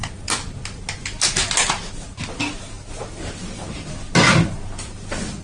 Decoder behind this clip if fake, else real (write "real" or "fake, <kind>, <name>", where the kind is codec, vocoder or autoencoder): real